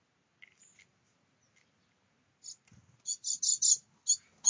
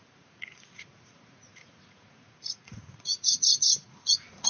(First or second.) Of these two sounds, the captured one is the first